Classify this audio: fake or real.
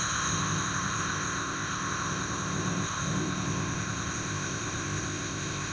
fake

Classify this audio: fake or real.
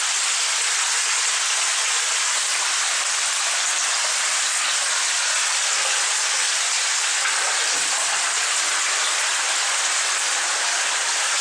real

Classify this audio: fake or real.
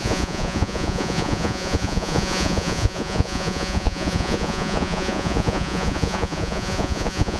fake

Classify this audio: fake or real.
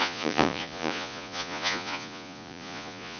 fake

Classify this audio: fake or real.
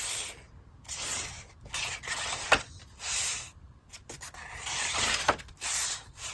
real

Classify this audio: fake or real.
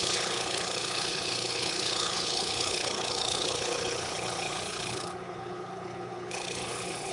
fake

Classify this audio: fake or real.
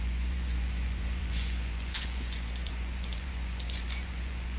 fake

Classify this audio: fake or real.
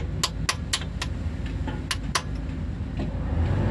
real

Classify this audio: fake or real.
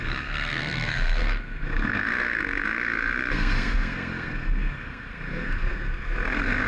fake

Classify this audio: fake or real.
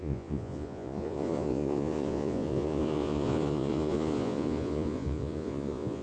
fake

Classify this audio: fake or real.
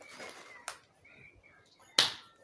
real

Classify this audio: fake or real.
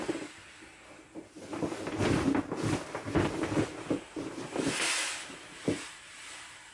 real